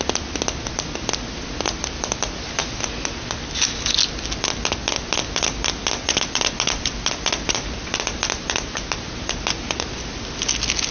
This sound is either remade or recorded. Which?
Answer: recorded